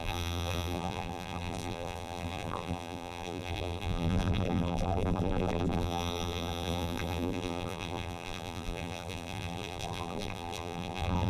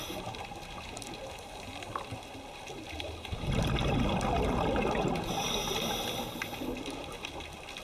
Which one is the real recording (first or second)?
second